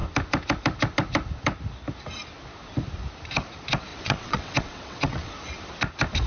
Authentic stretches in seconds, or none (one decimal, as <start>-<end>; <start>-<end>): 0.0-3.9; 5.3-6.3

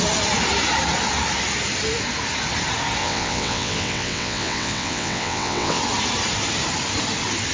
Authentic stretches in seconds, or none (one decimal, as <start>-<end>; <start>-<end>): 0.0-3.0; 5.8-7.5

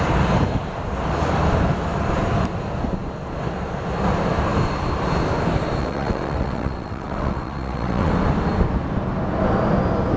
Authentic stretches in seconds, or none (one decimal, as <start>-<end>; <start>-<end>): 0.0-5.8; 8.1-10.2

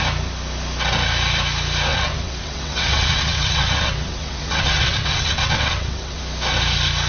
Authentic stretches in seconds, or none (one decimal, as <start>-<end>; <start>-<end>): 0.0-1.9; 6.2-7.1

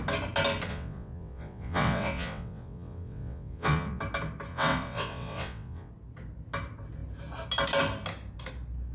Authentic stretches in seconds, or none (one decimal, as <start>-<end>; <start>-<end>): 0.0-0.7; 4.0-4.5; 5.9-8.9

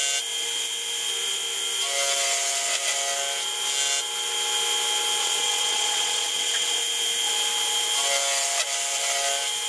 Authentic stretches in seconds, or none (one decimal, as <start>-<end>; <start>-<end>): 0.0-5.2; 6.8-9.7